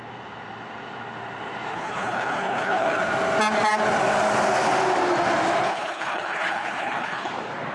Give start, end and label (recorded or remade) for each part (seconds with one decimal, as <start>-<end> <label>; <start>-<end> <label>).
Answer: 0.0-1.7 recorded; 1.7-3.1 remade; 3.1-5.6 recorded; 5.6-7.3 remade; 7.3-7.7 recorded